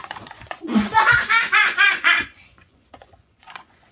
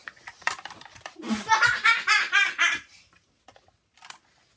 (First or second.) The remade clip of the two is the first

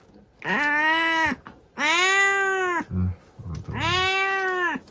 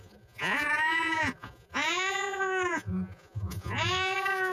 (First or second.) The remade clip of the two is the second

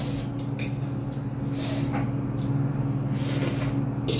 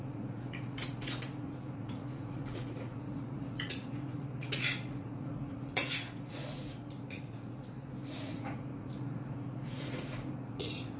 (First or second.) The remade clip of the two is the second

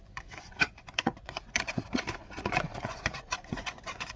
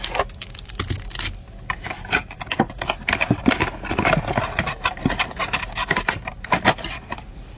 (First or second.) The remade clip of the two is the first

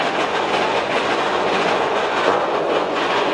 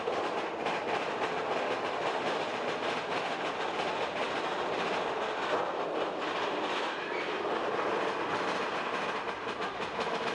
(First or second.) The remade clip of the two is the first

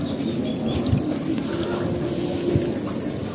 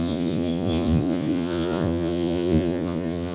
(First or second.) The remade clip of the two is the second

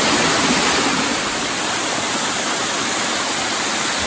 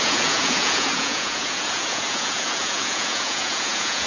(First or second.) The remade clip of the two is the second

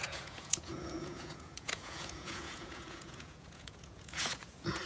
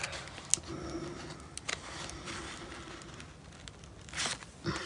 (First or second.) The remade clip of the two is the first